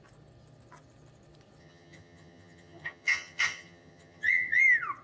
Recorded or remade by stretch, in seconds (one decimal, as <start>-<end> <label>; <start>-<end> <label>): 0.0-1.6 recorded; 1.6-4.6 remade; 4.6-5.0 recorded